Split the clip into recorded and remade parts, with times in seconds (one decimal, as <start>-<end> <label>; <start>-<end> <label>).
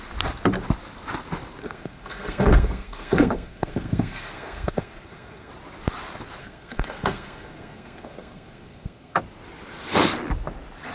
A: 0.0-1.6 recorded; 1.6-5.5 remade; 5.5-6.4 recorded; 6.4-9.2 remade; 9.2-10.9 recorded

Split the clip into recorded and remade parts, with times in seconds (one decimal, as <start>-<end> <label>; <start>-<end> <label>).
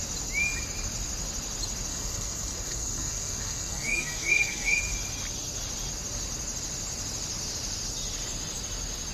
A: 0.0-1.9 recorded; 1.9-4.8 remade; 4.8-9.1 recorded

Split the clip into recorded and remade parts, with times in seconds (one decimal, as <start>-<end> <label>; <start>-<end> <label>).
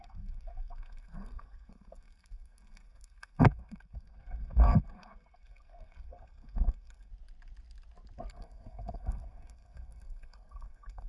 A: 0.0-7.1 remade; 7.1-8.3 recorded; 8.3-11.1 remade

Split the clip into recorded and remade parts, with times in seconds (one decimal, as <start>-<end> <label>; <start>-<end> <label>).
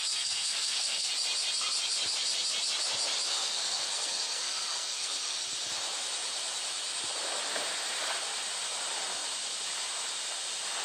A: 0.0-1.1 remade; 1.1-3.3 recorded; 3.3-5.4 remade; 5.4-10.8 recorded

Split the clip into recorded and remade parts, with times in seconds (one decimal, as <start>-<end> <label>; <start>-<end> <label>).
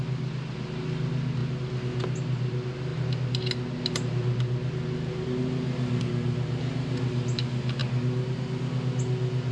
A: 0.0-9.5 recorded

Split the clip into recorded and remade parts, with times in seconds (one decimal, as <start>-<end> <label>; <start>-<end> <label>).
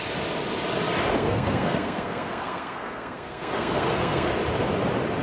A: 0.0-1.2 recorded; 1.2-4.3 remade; 4.3-5.2 recorded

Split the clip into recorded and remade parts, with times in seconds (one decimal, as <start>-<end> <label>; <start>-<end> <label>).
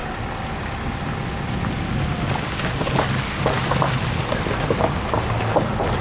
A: 0.0-6.0 recorded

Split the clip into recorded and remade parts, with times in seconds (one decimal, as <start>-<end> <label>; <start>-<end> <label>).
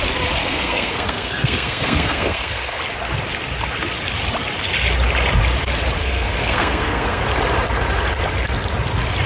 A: 0.0-0.4 recorded; 0.4-2.8 remade; 2.8-6.0 recorded; 6.0-7.2 remade; 7.2-9.3 recorded